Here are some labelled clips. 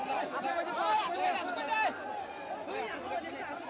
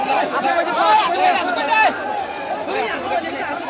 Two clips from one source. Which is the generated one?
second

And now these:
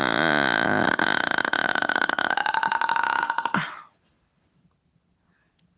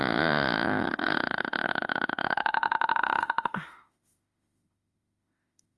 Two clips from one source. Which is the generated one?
second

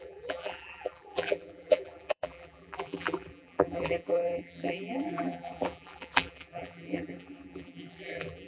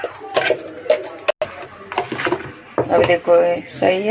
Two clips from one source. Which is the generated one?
first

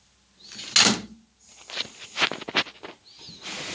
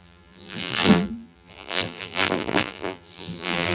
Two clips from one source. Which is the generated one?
second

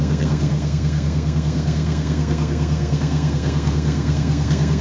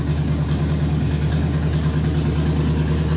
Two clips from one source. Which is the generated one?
first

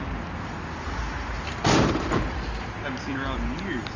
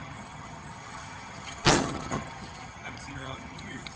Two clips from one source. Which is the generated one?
second